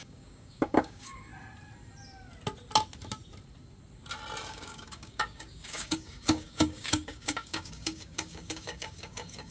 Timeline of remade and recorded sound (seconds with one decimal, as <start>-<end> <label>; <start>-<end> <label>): 0.0-1.3 remade; 1.3-4.5 recorded; 4.5-9.5 remade